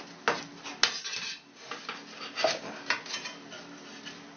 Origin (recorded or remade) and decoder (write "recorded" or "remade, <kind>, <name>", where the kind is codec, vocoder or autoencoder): recorded